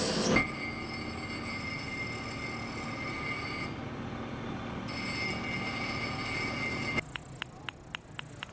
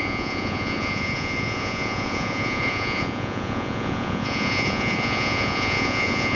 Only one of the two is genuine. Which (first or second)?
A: first